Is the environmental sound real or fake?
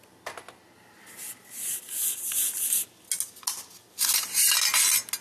real